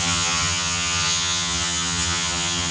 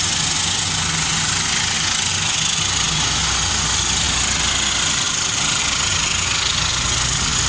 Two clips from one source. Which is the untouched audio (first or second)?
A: second